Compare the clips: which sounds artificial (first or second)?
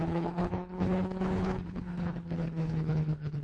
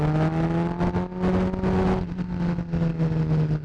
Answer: first